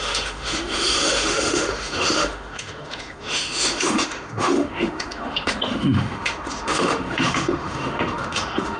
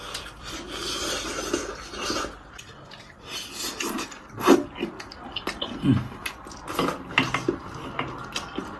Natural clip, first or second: second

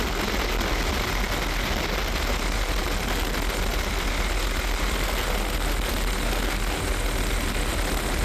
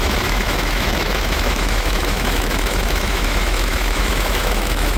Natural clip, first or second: first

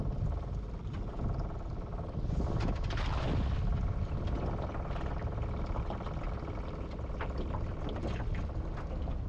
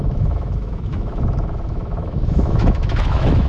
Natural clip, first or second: first